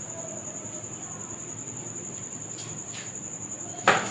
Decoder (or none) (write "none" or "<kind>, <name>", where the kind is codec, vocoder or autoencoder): none